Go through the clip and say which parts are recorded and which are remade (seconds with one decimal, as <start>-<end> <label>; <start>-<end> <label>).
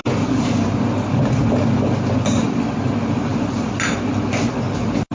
0.0-5.1 recorded